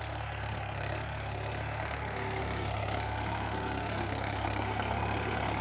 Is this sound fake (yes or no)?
yes